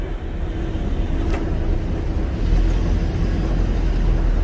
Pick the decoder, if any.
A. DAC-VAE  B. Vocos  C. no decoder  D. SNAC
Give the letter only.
C